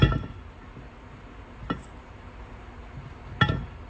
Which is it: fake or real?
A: real